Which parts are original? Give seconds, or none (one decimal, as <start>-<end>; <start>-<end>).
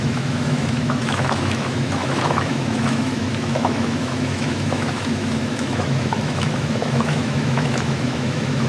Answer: none